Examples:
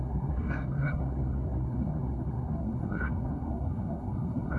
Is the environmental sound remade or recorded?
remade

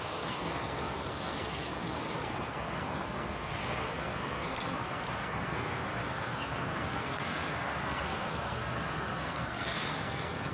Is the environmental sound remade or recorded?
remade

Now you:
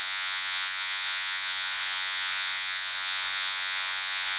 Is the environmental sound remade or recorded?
remade